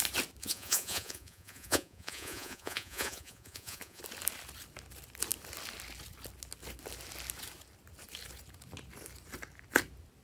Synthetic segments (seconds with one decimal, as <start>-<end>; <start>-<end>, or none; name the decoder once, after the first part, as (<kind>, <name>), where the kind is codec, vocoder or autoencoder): 0.4-4.0 (vocoder, Vocos)

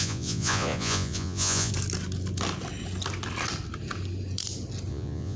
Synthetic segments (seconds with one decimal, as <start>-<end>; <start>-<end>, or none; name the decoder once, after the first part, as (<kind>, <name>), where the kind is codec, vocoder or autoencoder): 0.0-1.7 (vocoder, Vocos); 4.9-5.4

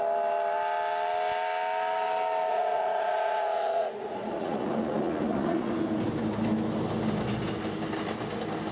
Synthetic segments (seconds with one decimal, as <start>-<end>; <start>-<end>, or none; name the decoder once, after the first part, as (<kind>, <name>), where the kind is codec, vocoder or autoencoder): 2.5-5.7 (vocoder, Vocos)

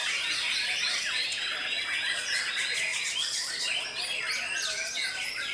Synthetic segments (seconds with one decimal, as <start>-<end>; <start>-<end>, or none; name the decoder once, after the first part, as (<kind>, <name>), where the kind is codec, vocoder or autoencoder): none

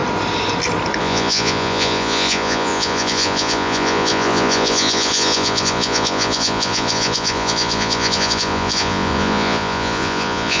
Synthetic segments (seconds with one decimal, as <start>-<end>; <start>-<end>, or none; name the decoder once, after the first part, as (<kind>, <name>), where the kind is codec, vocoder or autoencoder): 1.0-10.6 (vocoder, Vocos)

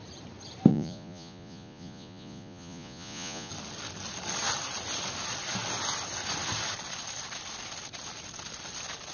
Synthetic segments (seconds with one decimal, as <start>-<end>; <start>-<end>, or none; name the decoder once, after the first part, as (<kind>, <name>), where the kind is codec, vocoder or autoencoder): 0.7-3.5 (vocoder, Vocos)

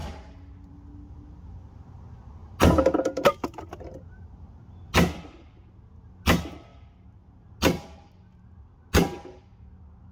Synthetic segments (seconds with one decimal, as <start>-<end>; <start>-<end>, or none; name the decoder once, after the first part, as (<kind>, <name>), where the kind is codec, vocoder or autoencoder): none

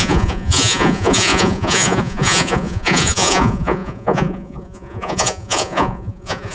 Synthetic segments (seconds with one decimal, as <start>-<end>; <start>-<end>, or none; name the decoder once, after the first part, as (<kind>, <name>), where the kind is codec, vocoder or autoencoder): 0.0-6.5 (vocoder, Vocos)